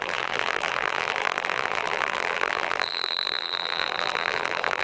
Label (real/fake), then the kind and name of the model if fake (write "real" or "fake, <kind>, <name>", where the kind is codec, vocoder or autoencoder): fake, vocoder, BigVGAN v2